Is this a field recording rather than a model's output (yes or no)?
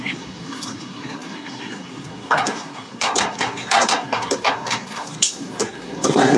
no